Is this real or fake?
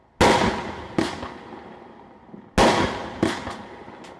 real